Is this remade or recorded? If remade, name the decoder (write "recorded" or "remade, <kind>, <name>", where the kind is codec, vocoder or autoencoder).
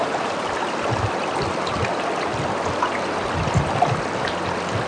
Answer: recorded